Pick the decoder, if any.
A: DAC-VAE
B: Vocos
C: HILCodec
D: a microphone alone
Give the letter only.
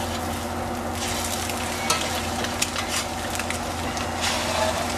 D